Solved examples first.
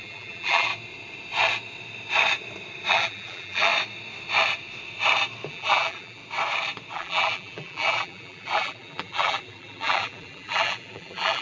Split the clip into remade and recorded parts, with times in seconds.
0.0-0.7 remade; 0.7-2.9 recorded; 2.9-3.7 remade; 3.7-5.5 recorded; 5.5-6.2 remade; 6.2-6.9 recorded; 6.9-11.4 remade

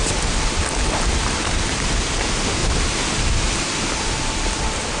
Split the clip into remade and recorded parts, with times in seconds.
0.0-1.9 remade; 1.9-2.6 recorded; 2.6-5.0 remade

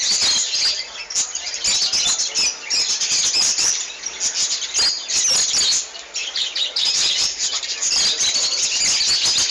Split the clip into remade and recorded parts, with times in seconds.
0.0-3.4 recorded; 3.4-4.0 remade; 4.0-6.2 recorded; 6.2-7.6 remade; 7.6-9.5 recorded

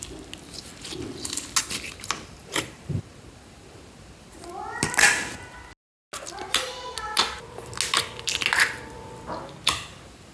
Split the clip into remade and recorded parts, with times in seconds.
0.0-2.4 recorded; 2.4-3.0 remade; 3.0-10.3 recorded

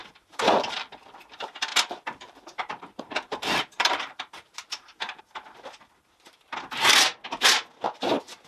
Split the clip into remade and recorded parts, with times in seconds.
0.0-1.2 remade; 1.2-1.7 recorded; 1.7-5.2 remade; 5.2-8.5 recorded

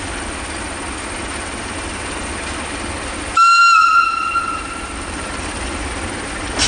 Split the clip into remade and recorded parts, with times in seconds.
0.0-3.6 recorded; 3.6-5.9 remade; 5.9-6.7 recorded